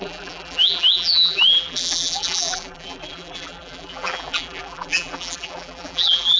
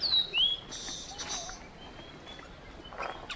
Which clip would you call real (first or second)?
second